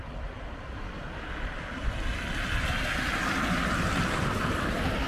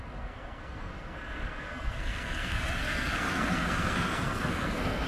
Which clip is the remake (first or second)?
second